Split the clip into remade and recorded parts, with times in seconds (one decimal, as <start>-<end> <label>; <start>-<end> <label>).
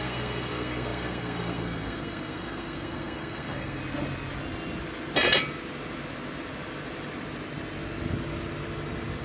0.0-3.8 remade; 3.8-9.2 recorded